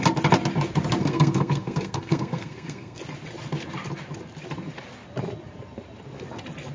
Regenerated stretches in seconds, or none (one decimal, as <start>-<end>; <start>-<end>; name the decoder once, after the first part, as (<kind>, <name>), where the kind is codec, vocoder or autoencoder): 1.0-3.0 (codec, SNAC)